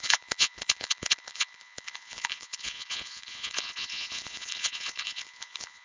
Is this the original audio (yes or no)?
no